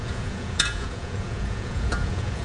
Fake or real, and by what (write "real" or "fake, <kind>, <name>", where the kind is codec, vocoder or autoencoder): fake, vocoder, Vocos